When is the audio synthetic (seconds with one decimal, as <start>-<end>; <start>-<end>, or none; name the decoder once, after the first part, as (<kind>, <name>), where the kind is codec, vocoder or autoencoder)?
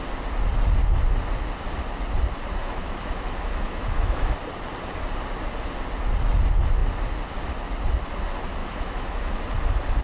2.6-4.3 (autoencoder, DAC-VAE); 8.6-9.4